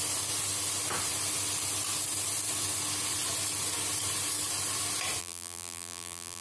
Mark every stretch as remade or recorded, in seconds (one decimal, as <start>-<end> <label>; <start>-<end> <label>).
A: 0.0-5.2 recorded; 5.2-6.4 remade